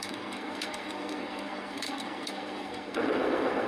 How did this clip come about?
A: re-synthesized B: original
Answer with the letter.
A